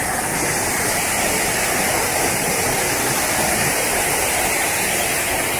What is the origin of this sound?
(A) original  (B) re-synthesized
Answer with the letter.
A